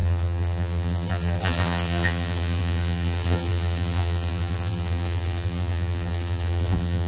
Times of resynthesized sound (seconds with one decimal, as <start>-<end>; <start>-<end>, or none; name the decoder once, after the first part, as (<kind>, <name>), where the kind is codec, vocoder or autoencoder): 0.0-7.1 (vocoder, BigVGAN v2)